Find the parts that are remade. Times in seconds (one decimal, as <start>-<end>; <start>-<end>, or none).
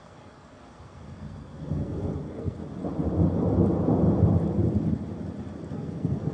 0.0-2.6; 5.7-6.3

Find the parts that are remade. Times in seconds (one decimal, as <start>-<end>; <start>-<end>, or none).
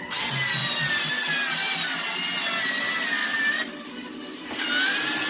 none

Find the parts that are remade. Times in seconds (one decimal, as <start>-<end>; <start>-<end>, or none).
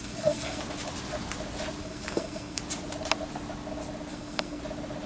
0.0-0.6; 1.8-2.6; 4.1-4.6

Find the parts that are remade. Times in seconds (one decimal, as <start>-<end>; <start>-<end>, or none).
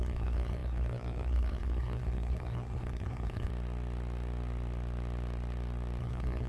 0.0-3.5; 6.0-6.5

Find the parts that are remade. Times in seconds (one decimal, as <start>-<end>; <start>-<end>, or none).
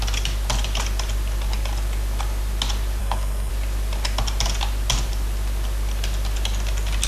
3.0-3.5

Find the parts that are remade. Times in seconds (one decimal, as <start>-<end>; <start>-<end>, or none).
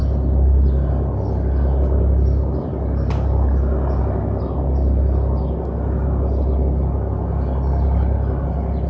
none